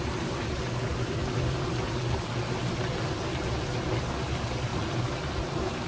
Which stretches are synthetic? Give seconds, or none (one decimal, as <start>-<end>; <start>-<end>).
0.9-1.7; 4.7-5.9